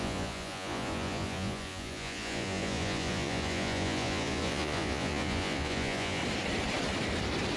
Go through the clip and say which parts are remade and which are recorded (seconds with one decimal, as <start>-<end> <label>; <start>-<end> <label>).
0.0-6.2 remade; 6.2-7.6 recorded